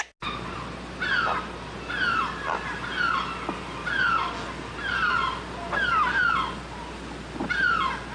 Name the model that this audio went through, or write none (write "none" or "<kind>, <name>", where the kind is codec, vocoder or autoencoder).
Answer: none